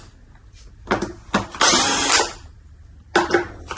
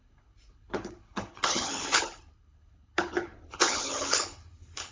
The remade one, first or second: second